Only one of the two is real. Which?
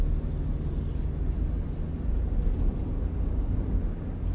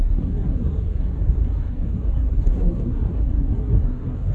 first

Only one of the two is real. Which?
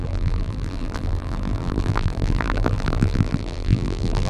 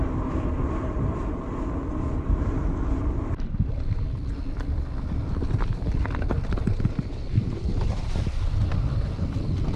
second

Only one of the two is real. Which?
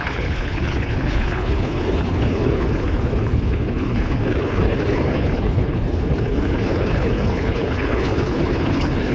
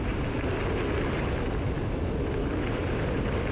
second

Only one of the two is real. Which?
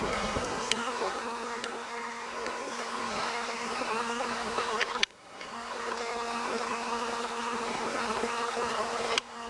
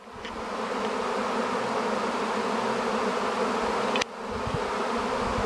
second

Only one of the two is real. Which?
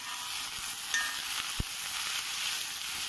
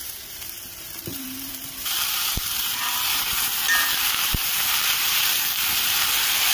first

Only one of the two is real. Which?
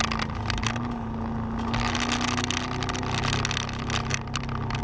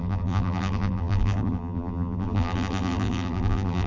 first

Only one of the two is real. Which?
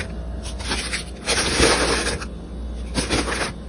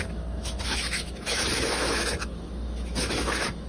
first